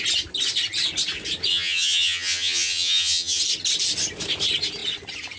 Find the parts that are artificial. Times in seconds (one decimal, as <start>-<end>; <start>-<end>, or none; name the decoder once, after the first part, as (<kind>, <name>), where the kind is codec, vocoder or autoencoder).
1.5-3.4 (vocoder, HiFi-GAN)